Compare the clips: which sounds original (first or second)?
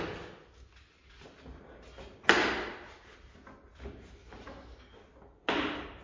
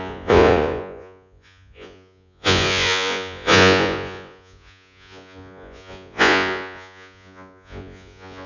first